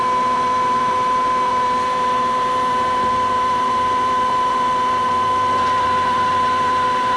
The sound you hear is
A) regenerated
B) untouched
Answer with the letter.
A